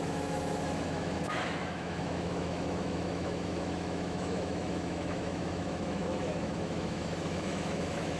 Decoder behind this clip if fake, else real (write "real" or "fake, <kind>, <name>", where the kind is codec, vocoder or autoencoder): fake, autoencoder, DAC-VAE